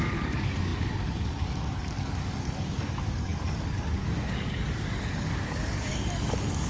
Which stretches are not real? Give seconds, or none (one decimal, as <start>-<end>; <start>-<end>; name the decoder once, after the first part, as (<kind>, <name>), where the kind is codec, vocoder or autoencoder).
0.0-6.7 (codec, DAC)